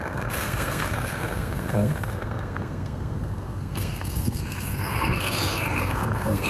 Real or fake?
fake